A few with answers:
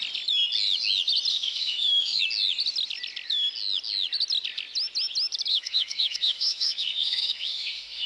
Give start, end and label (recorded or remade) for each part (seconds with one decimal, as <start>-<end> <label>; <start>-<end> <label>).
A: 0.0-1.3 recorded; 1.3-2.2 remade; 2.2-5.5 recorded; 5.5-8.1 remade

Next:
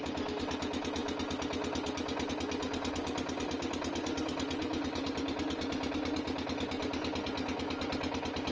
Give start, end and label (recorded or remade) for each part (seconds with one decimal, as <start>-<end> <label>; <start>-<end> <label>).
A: 0.0-4.7 recorded; 4.7-5.2 remade; 5.2-8.5 recorded

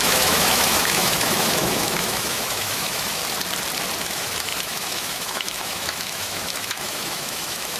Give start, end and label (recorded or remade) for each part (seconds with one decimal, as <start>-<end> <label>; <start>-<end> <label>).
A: 0.0-3.2 remade; 3.2-4.0 recorded; 4.0-7.8 remade

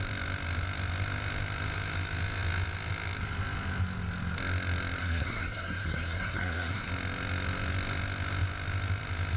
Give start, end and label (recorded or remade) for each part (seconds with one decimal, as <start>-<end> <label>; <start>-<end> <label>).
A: 0.0-5.0 recorded; 5.0-6.9 remade; 6.9-9.4 recorded

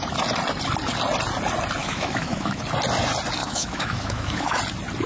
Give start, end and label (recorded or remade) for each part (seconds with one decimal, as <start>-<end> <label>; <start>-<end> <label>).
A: 0.0-1.8 recorded; 1.8-2.6 remade; 2.6-3.4 recorded; 3.4-4.6 remade; 4.6-5.1 recorded

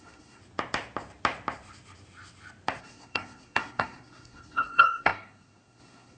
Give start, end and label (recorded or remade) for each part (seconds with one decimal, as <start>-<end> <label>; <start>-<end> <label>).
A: 0.0-0.4 remade; 0.4-2.8 recorded; 2.8-6.2 remade

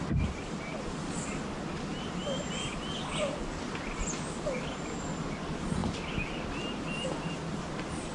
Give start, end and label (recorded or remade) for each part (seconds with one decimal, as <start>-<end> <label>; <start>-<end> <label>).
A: 0.0-5.8 recorded; 5.8-7.3 remade; 7.3-8.1 recorded